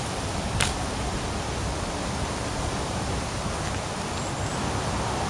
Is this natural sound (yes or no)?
yes